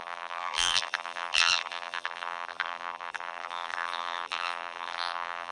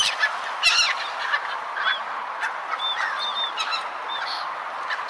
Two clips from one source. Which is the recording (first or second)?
second